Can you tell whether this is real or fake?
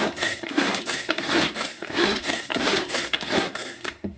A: fake